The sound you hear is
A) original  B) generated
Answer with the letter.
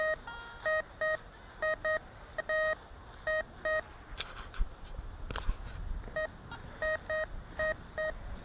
A